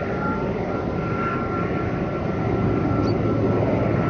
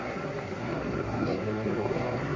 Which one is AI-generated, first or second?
second